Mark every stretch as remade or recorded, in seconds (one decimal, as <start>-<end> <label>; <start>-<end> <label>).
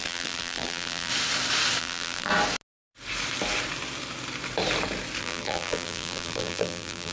0.0-1.1 remade; 1.1-1.8 recorded; 1.8-2.3 remade; 2.3-5.2 recorded; 5.2-7.1 remade